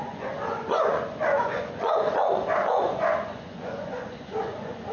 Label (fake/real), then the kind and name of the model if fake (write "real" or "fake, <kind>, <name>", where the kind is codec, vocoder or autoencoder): fake, vocoder, Vocos